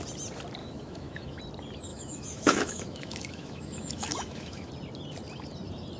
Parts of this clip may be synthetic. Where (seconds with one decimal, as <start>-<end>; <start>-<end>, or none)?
0.6-1.4; 1.9-4.7